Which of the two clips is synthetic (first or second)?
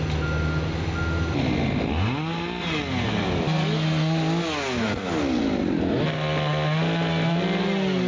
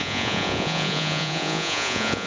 second